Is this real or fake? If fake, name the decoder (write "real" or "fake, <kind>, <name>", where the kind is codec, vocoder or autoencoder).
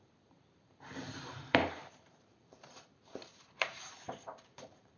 fake, vocoder, BigVGAN v2